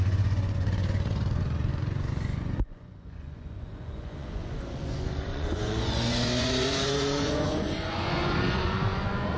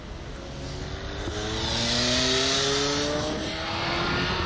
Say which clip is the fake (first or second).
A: first